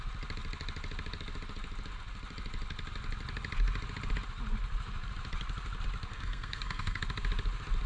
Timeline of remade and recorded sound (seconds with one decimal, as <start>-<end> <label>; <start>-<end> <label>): 0.0-6.1 recorded; 6.1-7.0 remade; 7.0-7.9 recorded